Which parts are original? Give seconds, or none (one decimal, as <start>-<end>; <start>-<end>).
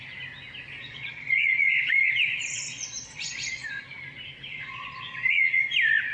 0.0-0.8; 3.8-4.5; 5.6-6.1